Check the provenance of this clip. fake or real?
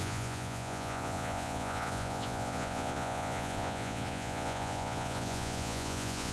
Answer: fake